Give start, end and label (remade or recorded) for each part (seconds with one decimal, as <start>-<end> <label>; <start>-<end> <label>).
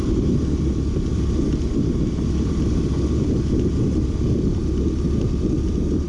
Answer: 0.0-6.1 recorded